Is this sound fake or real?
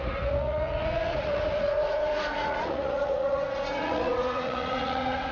fake